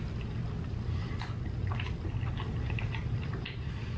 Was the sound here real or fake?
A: fake